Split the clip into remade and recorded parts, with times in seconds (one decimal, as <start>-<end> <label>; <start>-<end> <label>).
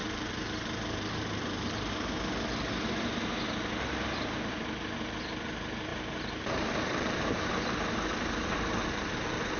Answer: 0.0-1.9 remade; 1.9-5.9 recorded; 5.9-9.6 remade